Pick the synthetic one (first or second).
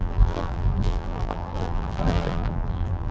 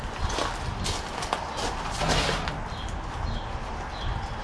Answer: first